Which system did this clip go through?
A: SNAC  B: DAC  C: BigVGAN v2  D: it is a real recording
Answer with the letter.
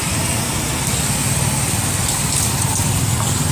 D